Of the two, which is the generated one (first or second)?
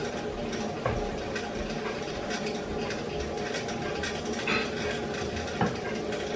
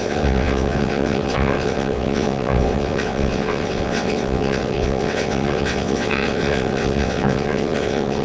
second